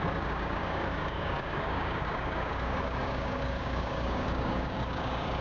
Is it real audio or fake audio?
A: fake